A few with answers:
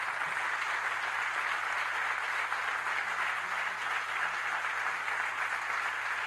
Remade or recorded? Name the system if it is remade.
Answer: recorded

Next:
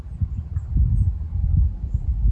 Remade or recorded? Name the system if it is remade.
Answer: recorded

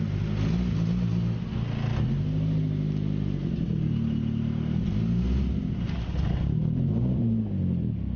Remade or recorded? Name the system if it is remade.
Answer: recorded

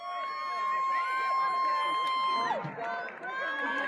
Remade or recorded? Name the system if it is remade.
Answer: recorded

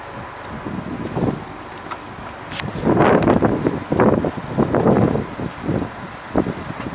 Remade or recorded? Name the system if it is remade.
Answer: recorded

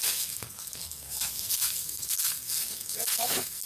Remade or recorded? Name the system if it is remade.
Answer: remade, codec, SNAC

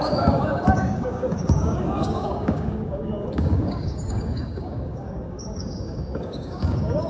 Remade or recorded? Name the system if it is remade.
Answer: remade, codec, DAC